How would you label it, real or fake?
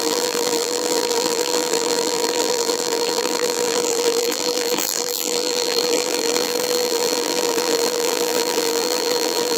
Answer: fake